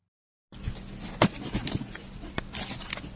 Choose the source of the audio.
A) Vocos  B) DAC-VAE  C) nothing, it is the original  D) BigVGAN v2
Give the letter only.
C